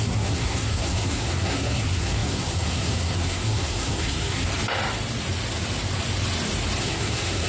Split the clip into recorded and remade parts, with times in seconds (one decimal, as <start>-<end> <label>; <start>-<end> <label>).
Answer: 0.0-4.5 remade; 4.5-6.8 recorded; 6.8-7.5 remade

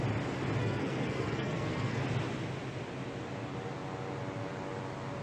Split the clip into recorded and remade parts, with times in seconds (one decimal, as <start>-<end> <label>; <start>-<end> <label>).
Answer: 0.0-0.6 recorded; 0.6-2.0 remade; 2.0-5.2 recorded